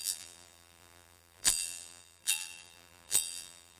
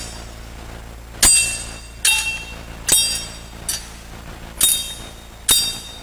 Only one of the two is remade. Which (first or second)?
first